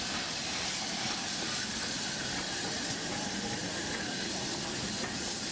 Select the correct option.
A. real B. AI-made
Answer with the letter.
A